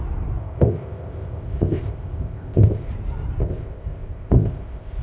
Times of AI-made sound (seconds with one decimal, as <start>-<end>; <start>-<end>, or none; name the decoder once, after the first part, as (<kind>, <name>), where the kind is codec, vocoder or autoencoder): 0.4-2.9 (codec, ZipCodec); 3.4-5.0